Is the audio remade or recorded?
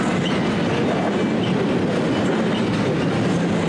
recorded